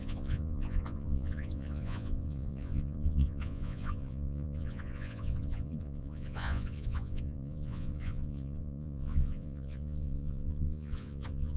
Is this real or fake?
fake